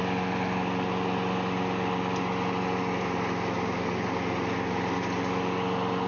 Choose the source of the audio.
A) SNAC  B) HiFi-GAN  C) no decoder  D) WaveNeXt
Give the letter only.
C